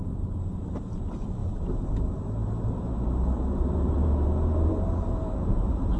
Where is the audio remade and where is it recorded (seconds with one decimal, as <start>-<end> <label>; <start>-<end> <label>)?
0.0-6.0 remade